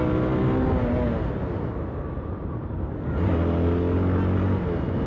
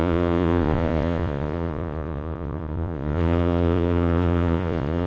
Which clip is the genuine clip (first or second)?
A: first